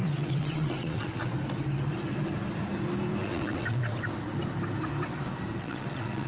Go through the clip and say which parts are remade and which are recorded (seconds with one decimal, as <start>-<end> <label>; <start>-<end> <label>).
0.0-1.2 remade; 1.2-3.2 recorded; 3.2-3.8 remade; 3.8-5.6 recorded; 5.6-6.3 remade